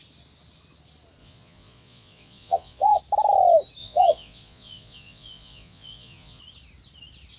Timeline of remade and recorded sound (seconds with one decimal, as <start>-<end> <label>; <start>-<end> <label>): 0.0-1.2 recorded; 1.2-3.0 remade; 3.0-3.8 recorded; 3.8-6.4 remade; 6.4-7.4 recorded